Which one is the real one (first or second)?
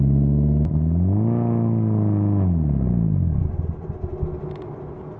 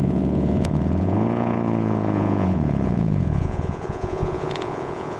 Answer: first